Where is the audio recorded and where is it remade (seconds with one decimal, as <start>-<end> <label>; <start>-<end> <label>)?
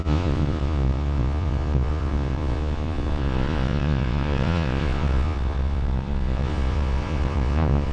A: 0.0-7.9 remade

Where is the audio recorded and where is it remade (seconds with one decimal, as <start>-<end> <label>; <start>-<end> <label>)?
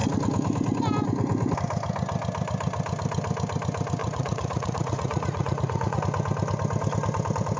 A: 0.0-4.0 recorded; 4.0-6.0 remade; 6.0-7.6 recorded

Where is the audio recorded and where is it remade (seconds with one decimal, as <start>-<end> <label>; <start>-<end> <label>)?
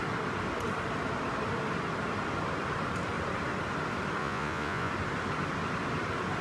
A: 0.0-4.2 recorded; 4.2-4.9 remade; 4.9-6.4 recorded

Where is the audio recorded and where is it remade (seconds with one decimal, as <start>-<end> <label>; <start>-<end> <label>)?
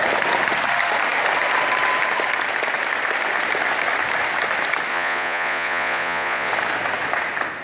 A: 0.0-4.9 recorded; 4.9-6.5 remade; 6.5-7.6 recorded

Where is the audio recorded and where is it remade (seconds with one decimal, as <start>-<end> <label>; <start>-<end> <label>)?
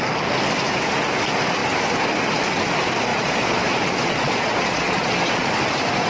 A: 0.0-3.1 recorded; 3.1-5.5 remade; 5.5-6.1 recorded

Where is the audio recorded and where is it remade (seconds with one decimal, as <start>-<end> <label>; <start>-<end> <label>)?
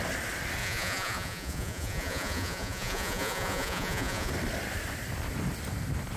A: 0.0-0.6 recorded; 0.6-4.3 remade; 4.3-6.2 recorded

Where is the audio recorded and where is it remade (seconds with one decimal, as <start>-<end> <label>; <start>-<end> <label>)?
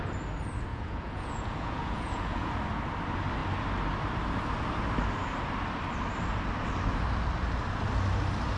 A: 0.0-0.7 recorded; 0.7-2.5 remade; 2.5-8.6 recorded